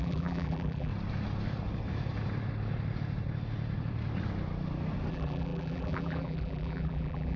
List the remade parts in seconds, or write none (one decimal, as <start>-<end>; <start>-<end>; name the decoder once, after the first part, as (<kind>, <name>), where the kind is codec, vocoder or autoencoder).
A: 0.0-0.9 (vocoder, BigVGAN v2); 5.1-7.4